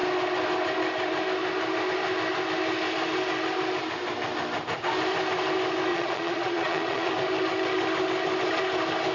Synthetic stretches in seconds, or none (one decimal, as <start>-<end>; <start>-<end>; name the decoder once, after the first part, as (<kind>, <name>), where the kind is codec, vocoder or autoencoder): 5.9-7.1 (vocoder, Vocos)